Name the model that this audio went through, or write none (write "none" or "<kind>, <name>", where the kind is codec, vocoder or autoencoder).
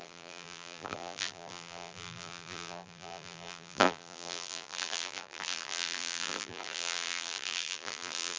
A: vocoder, BigVGAN v2